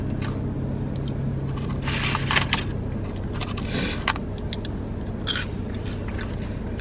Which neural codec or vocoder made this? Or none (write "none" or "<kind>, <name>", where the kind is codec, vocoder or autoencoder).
none